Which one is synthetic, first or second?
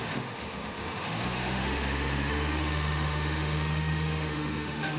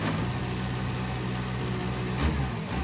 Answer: first